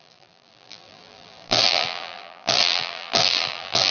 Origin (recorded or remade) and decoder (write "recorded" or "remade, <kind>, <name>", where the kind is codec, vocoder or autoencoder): remade, vocoder, BigVGAN v2